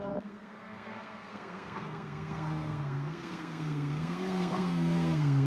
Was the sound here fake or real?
fake